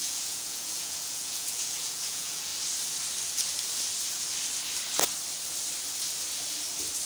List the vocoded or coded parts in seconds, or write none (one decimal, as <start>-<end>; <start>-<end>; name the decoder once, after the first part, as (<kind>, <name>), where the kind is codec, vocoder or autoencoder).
0.0-2.5 (vocoder, Vocos)